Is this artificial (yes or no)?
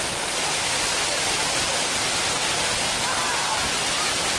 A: no